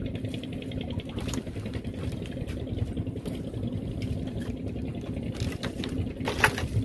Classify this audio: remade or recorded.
recorded